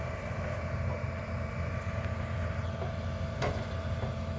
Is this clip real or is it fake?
real